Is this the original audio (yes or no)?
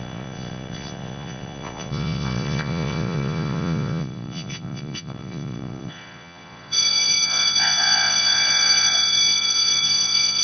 no